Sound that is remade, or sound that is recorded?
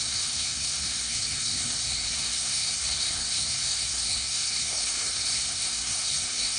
remade